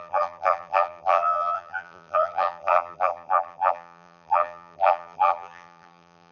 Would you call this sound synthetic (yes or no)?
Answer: yes